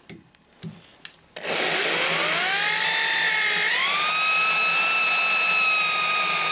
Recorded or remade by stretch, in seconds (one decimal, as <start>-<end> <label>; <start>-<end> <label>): 0.0-6.5 recorded